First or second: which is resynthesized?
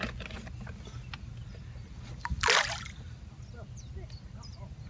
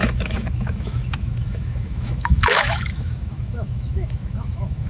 second